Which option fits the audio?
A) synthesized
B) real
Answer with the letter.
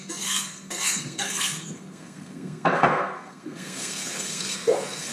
A